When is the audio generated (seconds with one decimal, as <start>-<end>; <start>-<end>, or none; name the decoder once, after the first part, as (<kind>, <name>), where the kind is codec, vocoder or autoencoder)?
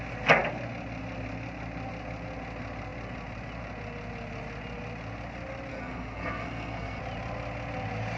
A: 5.7-7.0 (codec, SNAC)